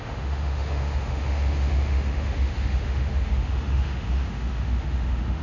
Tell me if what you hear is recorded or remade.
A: remade